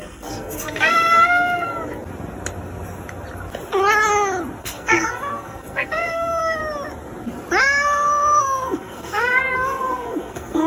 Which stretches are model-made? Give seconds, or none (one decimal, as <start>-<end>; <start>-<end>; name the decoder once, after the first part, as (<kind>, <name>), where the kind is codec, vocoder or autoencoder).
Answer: 0.0-1.7 (codec, SNAC); 4.6-6.6; 7.6-10.7